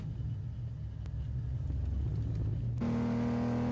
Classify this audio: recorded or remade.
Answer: recorded